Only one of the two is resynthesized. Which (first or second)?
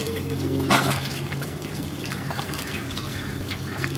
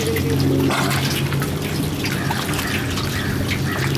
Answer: first